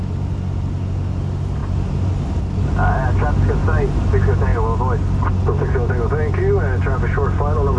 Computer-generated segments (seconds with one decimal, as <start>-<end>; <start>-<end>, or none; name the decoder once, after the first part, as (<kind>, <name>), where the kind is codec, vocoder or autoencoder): none